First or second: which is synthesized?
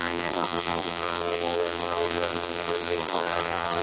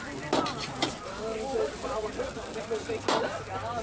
first